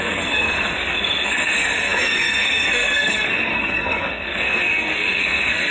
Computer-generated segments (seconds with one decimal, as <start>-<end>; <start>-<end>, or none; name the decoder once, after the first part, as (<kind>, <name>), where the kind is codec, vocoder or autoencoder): 0.0-5.7 (codec, SNAC)